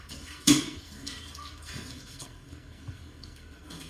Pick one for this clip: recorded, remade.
remade